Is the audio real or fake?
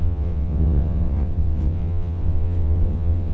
fake